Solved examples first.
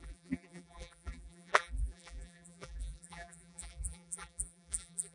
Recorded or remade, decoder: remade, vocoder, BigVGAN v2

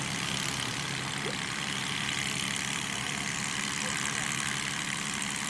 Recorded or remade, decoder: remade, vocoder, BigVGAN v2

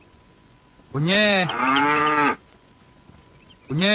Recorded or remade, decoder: remade, vocoder, Vocos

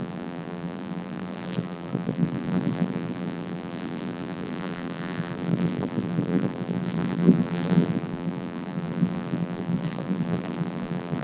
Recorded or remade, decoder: remade, vocoder, BigVGAN v2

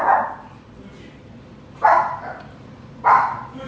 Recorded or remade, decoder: recorded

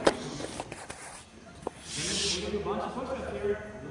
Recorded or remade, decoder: recorded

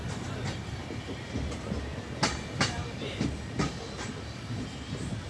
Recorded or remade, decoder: recorded